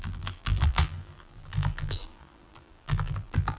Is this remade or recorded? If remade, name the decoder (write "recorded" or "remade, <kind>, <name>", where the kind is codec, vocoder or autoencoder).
remade, vocoder, BigVGAN v2